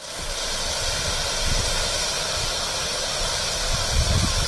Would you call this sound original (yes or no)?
yes